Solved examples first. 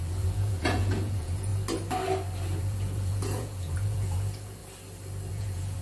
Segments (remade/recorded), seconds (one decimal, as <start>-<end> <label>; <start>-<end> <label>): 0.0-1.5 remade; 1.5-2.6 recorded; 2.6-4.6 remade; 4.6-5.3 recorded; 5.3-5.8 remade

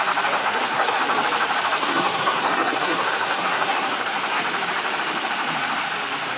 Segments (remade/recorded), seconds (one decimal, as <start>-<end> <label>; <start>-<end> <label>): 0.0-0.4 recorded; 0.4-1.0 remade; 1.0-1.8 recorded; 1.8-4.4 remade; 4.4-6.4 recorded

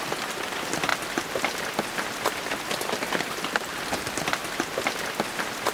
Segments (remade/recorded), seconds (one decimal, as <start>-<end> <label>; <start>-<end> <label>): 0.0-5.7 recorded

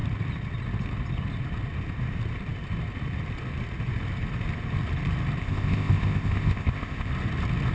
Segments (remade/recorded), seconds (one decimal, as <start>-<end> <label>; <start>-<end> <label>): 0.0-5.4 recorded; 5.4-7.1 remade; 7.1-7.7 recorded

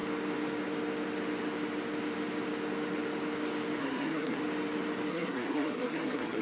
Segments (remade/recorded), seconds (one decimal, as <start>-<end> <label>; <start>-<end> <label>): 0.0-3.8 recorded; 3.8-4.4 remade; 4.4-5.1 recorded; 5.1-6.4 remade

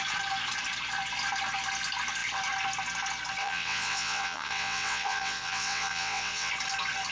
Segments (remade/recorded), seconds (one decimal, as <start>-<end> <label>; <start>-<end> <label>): 0.0-3.4 recorded; 3.4-6.5 remade; 6.5-7.1 recorded

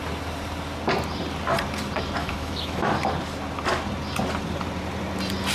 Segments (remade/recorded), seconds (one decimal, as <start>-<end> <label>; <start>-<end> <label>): 0.0-2.2 recorded; 2.2-2.9 remade; 2.9-5.5 recorded

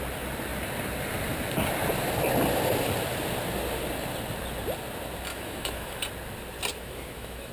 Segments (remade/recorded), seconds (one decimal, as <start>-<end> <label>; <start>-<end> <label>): 0.0-5.3 recorded; 5.3-6.0 remade; 6.0-6.7 recorded; 6.7-7.5 remade